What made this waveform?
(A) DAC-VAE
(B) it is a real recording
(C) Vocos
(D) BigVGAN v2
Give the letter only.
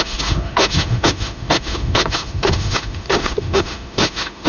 A